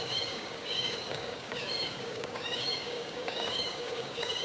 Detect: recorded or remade remade